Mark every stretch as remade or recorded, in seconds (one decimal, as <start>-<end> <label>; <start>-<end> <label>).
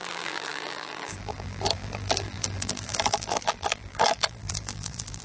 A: 0.0-5.2 remade